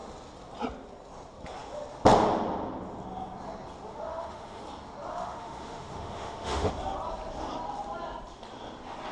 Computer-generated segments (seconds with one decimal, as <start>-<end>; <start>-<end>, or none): 3.9-4.6; 5.1-6.7